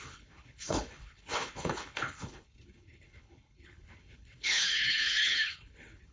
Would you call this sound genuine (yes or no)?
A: no